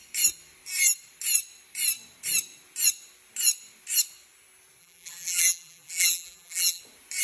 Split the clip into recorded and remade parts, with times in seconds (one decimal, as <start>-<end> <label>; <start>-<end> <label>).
0.0-4.8 recorded; 4.8-6.8 remade; 6.8-7.2 recorded